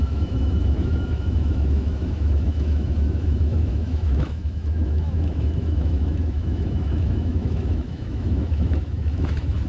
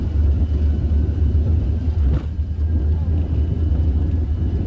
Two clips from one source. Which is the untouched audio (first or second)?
second